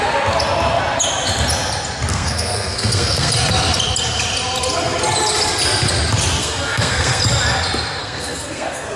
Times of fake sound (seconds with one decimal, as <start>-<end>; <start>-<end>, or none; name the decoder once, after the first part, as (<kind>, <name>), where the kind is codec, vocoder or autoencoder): 2.1-3.3 (codec, SNAC); 6.4-7.2; 8.0-9.0